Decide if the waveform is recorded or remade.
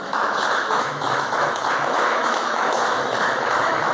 remade